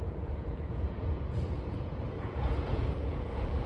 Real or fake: fake